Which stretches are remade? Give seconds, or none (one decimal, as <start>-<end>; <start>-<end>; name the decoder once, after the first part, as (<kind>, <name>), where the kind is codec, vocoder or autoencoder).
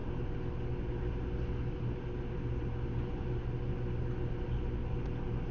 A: none